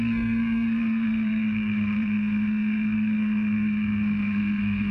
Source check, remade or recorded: remade